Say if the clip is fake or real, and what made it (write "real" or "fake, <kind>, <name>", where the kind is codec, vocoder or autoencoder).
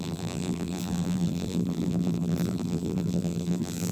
fake, vocoder, BigVGAN v2